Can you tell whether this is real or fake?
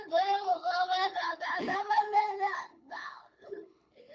fake